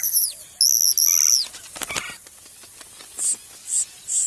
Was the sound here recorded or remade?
recorded